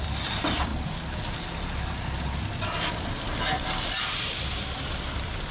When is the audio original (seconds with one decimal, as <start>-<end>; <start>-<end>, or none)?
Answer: 0.7-1.4